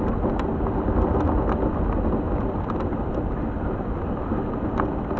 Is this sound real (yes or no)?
yes